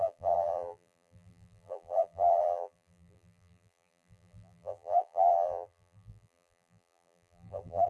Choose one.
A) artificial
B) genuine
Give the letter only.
A